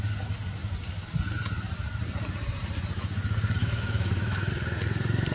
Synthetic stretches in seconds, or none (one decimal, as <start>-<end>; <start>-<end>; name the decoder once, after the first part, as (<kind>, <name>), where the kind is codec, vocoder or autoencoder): 3.6-4.5 (autoencoder, DAC-VAE)

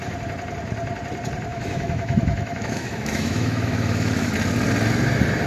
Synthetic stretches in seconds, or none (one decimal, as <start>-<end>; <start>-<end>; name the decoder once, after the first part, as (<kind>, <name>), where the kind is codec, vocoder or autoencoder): 1.5-4.3 (autoencoder, DAC-VAE)

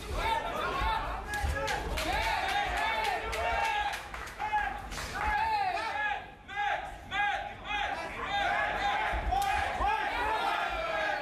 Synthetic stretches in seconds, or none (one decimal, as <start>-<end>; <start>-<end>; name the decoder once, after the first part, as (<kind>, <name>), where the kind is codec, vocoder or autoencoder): 3.6-4.4 (autoencoder, DAC-VAE)

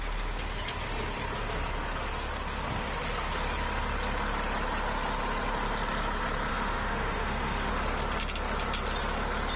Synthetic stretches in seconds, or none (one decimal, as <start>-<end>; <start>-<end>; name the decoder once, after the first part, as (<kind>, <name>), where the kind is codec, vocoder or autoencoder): 6.5-7.7 (autoencoder, DAC-VAE)

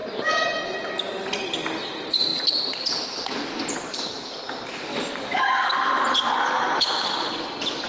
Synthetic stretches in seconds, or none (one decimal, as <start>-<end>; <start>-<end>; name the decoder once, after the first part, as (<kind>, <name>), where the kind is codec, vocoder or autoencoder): 4.9-5.4 (autoencoder, DAC-VAE)

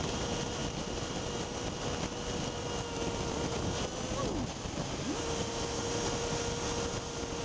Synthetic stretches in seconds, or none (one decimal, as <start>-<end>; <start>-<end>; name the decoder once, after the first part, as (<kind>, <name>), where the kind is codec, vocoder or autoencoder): none

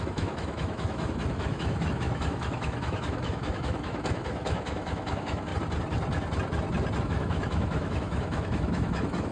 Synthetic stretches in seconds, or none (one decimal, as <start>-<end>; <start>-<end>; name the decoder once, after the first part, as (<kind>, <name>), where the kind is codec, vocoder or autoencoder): 0.0-5.5 (autoencoder, DAC-VAE); 7.0-9.3

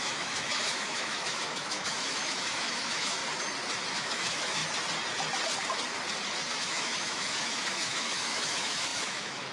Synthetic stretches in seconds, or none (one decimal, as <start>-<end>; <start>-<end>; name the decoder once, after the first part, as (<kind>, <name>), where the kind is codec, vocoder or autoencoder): 0.0-3.2 (autoencoder, DAC-VAE); 3.9-4.6; 6.6-9.5